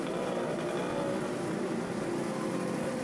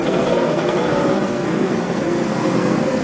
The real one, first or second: first